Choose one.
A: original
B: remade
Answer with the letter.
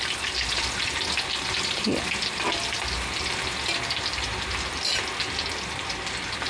A